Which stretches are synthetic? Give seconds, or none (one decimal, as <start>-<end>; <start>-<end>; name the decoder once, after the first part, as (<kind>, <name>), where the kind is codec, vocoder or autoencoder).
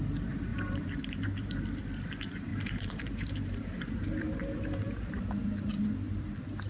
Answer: 0.5-1.8 (vocoder, BigVGAN v2); 2.5-5.3